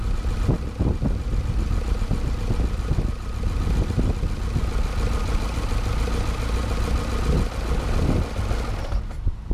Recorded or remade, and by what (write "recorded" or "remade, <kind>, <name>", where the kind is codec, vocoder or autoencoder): recorded